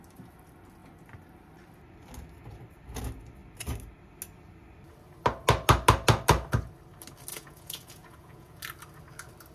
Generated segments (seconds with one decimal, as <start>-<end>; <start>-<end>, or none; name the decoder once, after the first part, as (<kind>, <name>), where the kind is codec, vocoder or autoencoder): 7.3-8.6 (vocoder, Vocos)